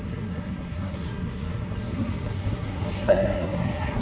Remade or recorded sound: remade